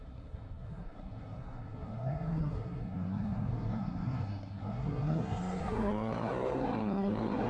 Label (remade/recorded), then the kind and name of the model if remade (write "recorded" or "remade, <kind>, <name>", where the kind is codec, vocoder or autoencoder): remade, codec, SNAC